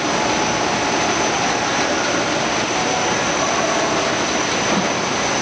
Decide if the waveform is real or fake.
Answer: real